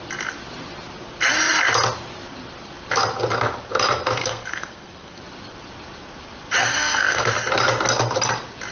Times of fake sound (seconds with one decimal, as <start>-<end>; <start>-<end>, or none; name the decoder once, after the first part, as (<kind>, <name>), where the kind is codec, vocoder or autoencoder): 4.2-5.2 (codec, SNAC); 6.6-7.3